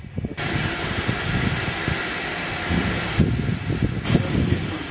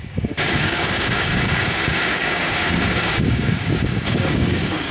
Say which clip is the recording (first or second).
first